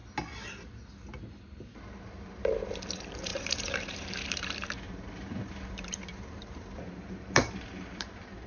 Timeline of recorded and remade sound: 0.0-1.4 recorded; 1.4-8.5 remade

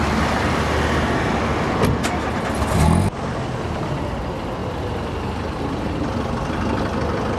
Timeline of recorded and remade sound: 0.0-4.6 recorded; 4.6-5.9 remade; 5.9-7.4 recorded

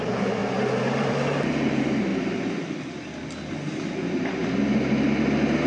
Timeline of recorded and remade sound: 0.0-2.1 remade; 2.1-5.7 recorded

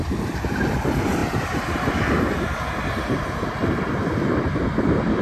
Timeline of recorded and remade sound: 0.0-5.2 recorded

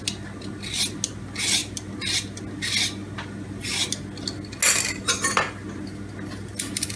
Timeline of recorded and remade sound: 0.0-7.0 recorded

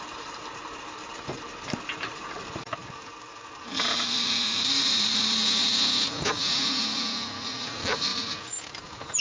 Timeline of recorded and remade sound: 0.0-5.4 remade; 5.4-7.5 recorded; 7.5-8.1 remade; 8.1-8.7 recorded; 8.7-9.2 remade

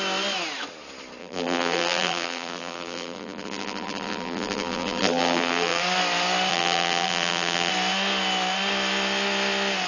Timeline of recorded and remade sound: 0.0-1.2 recorded; 1.2-5.8 remade; 5.8-6.5 recorded; 6.5-7.7 remade; 7.7-9.9 recorded